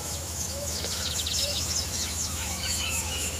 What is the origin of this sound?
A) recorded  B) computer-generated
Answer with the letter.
B